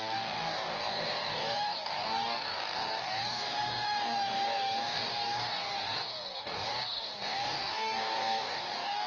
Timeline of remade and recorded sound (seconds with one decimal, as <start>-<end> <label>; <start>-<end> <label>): 0.0-9.1 remade

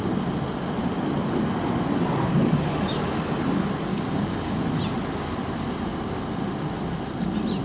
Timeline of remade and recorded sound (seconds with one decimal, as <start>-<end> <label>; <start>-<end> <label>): 0.0-3.9 recorded; 3.9-4.6 remade; 4.6-7.6 recorded